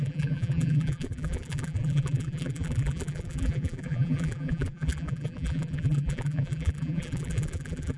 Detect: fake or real fake